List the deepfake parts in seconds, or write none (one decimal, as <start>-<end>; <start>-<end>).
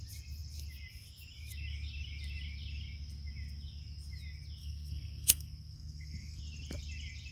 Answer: 4.6-6.4